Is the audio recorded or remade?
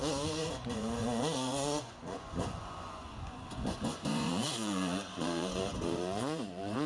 remade